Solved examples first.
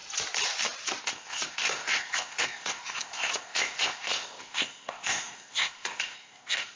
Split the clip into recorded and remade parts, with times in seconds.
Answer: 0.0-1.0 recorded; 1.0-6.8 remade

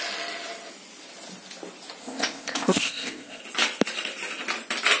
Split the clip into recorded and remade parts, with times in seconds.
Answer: 0.0-2.0 recorded; 2.0-3.4 remade; 3.4-5.0 recorded

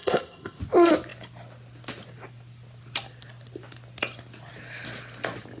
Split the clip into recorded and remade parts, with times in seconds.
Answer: 0.0-0.6 remade; 0.6-5.6 recorded